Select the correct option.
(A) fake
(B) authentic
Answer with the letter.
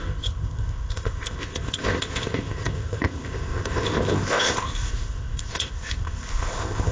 A